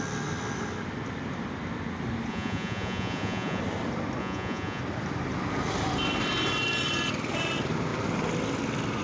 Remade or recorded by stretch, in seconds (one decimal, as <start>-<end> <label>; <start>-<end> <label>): 0.0-2.3 recorded; 2.3-3.6 remade; 3.6-4.2 recorded; 4.2-4.8 remade; 4.8-9.0 recorded